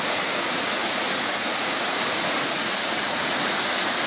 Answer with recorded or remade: remade